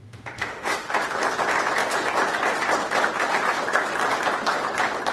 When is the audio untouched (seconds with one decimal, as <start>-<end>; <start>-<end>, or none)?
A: 0.9-5.1